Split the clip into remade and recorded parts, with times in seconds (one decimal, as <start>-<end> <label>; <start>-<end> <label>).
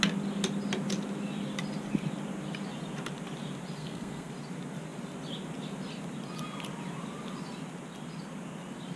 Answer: 0.0-3.8 recorded; 3.8-4.3 remade; 4.3-9.0 recorded